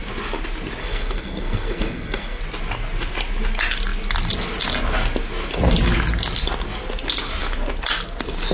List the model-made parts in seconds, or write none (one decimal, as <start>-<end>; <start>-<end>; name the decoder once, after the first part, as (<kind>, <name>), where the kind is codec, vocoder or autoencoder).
0.8-2.4 (codec, SNAC)